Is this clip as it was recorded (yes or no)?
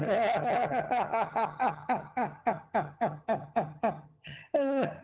no